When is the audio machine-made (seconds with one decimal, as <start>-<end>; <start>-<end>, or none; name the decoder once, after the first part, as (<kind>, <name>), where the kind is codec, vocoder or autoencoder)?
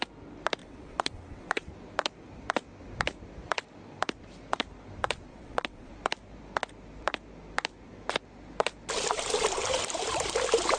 0.6-1.7 (vocoder, WaveNeXt); 5.3-5.9